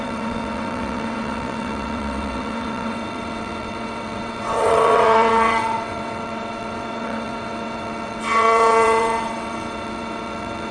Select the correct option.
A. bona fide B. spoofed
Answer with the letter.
B